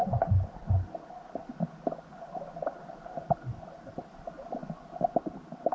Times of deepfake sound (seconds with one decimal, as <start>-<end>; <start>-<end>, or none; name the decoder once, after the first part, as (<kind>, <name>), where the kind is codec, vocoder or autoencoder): none